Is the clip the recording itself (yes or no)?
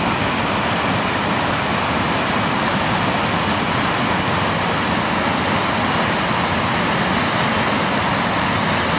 yes